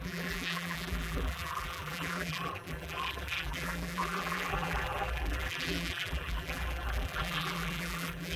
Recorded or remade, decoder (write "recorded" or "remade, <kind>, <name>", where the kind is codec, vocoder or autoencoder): remade, vocoder, BigVGAN v2